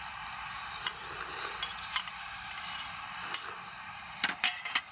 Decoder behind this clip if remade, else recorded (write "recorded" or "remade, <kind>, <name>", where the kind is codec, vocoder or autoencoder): recorded